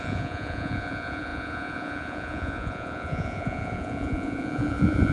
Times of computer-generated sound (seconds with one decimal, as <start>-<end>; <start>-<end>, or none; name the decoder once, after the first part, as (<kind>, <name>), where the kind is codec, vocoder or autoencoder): 0.0-5.1 (vocoder, Vocos)